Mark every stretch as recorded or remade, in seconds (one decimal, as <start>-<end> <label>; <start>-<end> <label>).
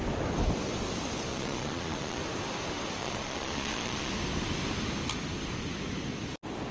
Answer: 0.0-1.3 recorded; 1.3-2.2 remade; 2.2-3.0 recorded; 3.0-4.1 remade; 4.1-6.7 recorded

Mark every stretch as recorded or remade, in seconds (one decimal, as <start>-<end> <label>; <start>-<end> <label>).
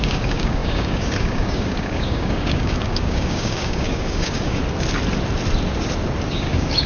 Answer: 0.0-4.6 remade; 4.6-6.3 recorded; 6.3-6.9 remade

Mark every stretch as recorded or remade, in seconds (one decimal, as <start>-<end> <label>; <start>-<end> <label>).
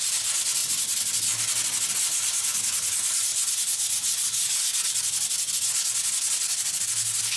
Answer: 0.0-7.4 recorded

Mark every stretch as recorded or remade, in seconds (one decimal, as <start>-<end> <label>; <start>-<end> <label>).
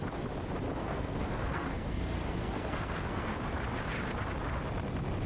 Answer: 0.0-0.8 recorded; 0.8-3.4 remade; 3.4-5.3 recorded